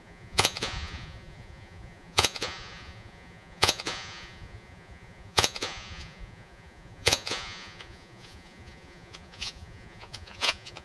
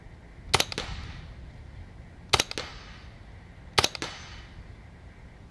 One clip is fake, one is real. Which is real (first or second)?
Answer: second